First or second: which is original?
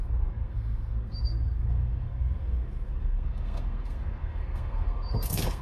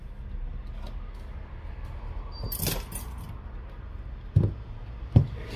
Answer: second